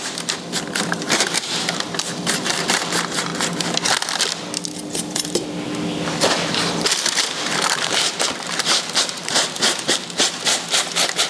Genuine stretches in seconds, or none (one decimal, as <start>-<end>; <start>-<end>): 3.3-6.8